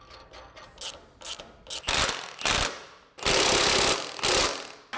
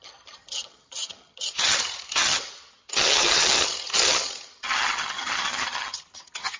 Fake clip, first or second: second